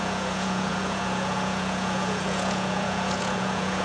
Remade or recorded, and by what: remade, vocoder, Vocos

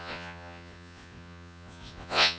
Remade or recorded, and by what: remade, vocoder, Vocos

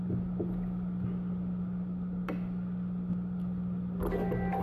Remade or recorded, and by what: recorded